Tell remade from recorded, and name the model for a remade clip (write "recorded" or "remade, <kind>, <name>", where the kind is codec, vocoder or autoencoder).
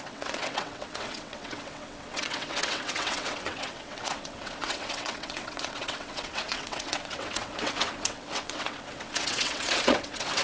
remade, vocoder, WaveNeXt